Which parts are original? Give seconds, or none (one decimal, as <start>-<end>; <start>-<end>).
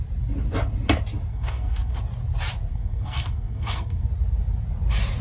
0.0-1.3; 2.0-2.7; 4.1-5.2